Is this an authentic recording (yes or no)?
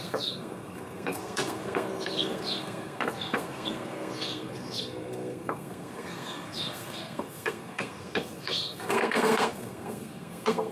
no